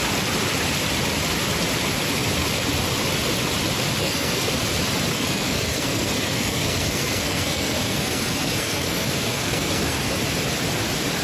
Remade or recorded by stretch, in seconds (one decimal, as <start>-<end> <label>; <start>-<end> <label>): 0.0-4.0 recorded; 4.0-4.5 remade; 4.5-5.1 recorded; 5.1-10.2 remade; 10.2-11.2 recorded